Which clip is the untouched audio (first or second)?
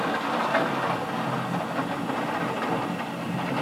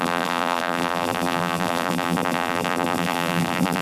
first